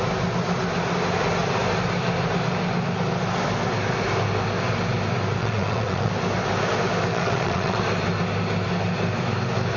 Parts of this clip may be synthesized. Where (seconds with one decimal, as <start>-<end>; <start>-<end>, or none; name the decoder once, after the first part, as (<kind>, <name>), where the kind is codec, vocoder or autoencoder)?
5.4-6.1 (vocoder, WaveNeXt); 7.1-7.8